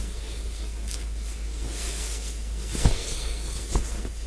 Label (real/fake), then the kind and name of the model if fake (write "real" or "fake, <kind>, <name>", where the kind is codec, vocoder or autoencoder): fake, codec, SNAC